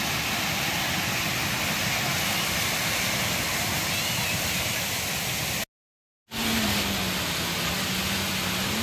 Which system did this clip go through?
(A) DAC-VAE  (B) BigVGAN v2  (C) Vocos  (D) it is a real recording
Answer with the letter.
D